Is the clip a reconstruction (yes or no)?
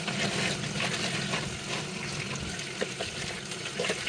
no